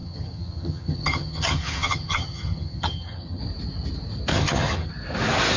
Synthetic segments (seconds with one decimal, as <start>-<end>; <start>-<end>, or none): 0.0-3.4; 4.3-4.9